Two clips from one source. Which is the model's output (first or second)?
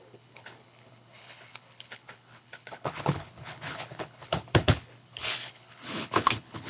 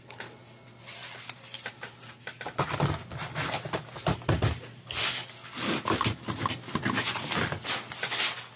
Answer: first